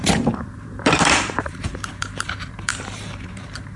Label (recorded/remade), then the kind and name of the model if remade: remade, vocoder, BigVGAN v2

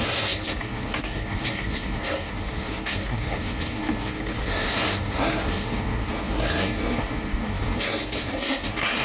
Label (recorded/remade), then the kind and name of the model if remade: remade, codec, SNAC